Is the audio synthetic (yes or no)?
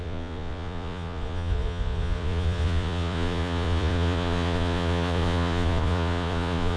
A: yes